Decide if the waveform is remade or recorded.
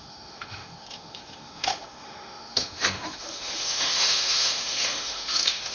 remade